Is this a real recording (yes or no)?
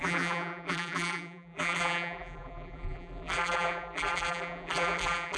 no